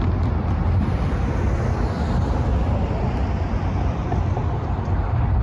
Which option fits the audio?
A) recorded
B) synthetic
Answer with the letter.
A